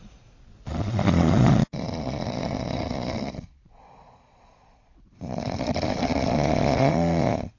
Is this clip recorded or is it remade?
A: remade